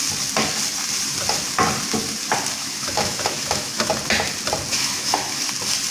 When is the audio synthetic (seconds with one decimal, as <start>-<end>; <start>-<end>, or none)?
2.6-3.9; 4.8-5.5